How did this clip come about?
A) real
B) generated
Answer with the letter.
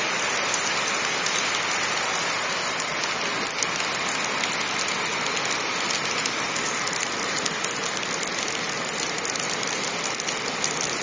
A